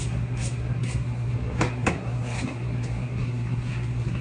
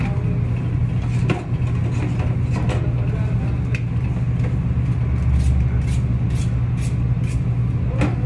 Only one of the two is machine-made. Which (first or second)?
first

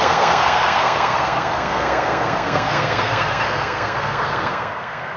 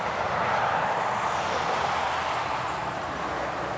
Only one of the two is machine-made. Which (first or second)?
first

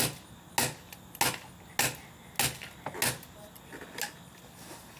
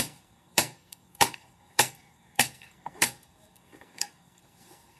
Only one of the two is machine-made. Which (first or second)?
second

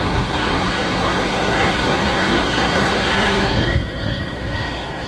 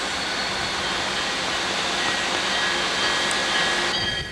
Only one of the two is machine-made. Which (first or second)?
first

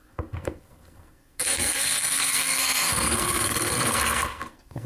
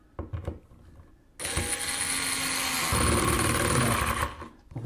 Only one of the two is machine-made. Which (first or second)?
first